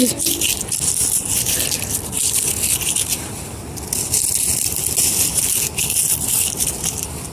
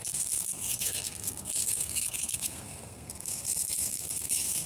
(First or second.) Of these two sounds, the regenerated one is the second